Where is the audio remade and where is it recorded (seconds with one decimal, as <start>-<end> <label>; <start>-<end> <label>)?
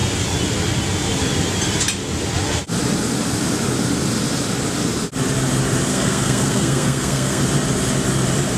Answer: 0.0-5.9 recorded; 5.9-7.4 remade; 7.4-8.6 recorded